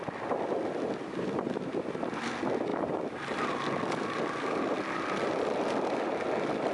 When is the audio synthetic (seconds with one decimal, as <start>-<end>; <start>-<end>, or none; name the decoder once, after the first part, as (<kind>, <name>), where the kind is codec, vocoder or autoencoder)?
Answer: none